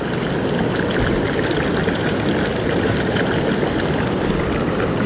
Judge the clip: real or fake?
real